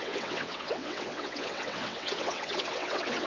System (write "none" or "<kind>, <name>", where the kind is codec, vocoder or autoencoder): vocoder, WaveNeXt